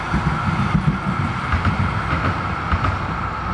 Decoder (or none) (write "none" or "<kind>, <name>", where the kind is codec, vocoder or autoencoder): none